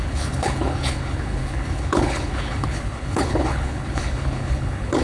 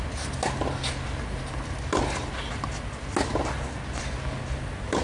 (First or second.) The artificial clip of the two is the first